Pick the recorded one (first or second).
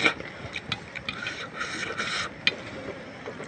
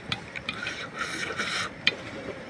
first